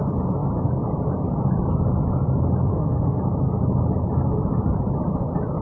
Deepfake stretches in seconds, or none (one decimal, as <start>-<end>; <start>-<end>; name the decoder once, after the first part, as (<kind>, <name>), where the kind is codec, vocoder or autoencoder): 2.7-3.2 (codec, SNAC)